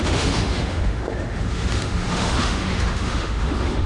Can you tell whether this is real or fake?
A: fake